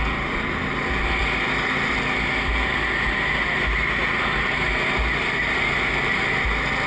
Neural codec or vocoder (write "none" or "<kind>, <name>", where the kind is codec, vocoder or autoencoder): none